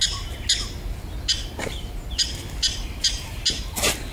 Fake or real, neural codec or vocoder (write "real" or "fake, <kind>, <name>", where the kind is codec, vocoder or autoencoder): real